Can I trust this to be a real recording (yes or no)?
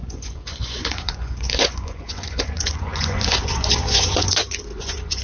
no